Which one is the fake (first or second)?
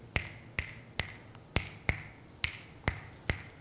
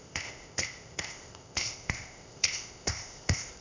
second